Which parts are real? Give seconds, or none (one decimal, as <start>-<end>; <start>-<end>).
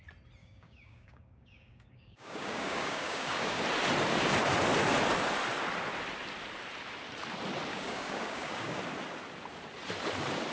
0.0-0.4; 3.6-7.7; 8.8-10.5